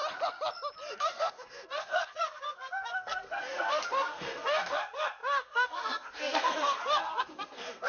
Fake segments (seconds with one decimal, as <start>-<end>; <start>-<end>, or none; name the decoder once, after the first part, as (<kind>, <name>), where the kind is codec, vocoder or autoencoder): 0.9-7.9 (codec, SNAC)